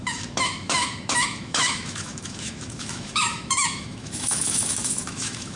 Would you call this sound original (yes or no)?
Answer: no